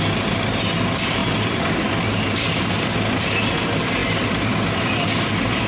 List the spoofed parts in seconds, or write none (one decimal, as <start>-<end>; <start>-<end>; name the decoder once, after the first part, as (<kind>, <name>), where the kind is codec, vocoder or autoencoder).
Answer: 1.2-1.8 (vocoder, BigVGAN v2)